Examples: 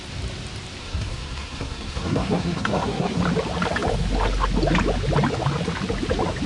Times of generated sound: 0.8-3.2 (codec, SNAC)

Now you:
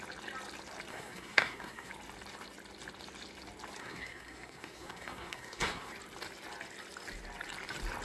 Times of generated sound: 0.9-1.9 (codec, SNAC); 3.8-5.9

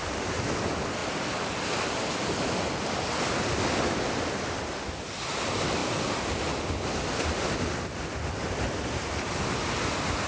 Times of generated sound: none